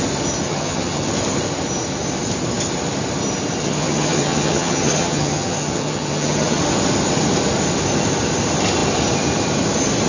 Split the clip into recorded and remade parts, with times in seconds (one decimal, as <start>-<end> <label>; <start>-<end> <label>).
0.0-0.5 recorded; 0.5-1.1 remade; 1.1-3.6 recorded; 3.6-6.6 remade; 6.6-10.1 recorded